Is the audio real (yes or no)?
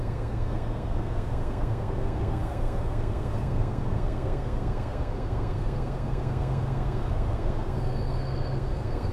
no